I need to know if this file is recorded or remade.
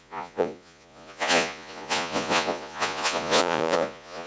remade